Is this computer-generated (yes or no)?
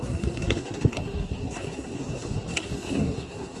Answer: yes